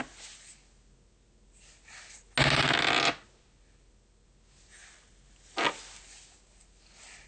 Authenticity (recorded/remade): recorded